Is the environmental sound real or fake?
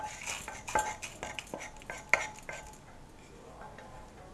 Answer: real